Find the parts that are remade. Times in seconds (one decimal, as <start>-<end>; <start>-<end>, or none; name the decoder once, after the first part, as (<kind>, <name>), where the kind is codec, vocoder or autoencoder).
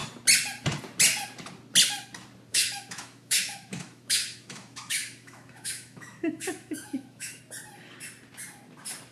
2.5-7.4 (autoencoder, DAC-VAE)